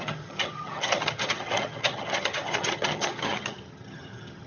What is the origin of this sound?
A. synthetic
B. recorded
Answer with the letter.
A